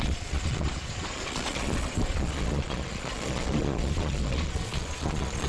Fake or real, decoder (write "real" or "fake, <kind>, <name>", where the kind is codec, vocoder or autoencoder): fake, vocoder, Vocos